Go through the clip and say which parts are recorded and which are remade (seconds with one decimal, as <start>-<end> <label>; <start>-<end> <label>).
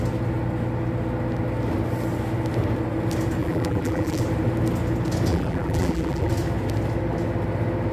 0.0-3.4 recorded; 3.4-4.2 remade; 4.2-5.3 recorded; 5.3-6.3 remade; 6.3-7.9 recorded